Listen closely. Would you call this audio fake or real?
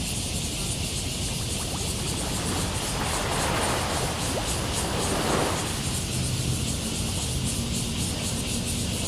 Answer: real